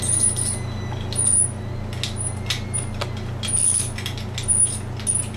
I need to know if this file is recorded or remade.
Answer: recorded